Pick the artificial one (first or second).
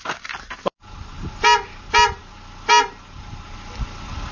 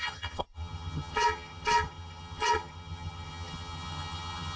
second